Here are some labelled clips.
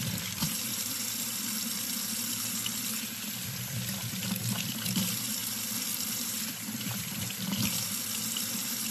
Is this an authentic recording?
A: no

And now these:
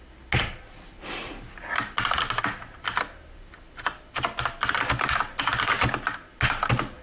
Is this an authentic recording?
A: yes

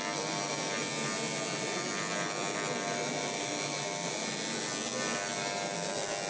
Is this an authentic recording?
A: yes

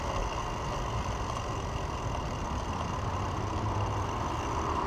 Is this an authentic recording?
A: yes